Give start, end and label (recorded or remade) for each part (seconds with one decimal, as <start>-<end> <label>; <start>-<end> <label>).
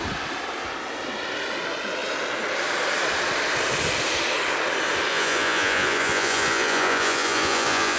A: 0.0-5.1 recorded; 5.1-8.0 remade